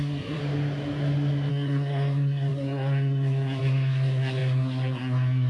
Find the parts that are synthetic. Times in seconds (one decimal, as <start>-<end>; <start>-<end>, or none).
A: 0.0-0.4; 1.5-5.5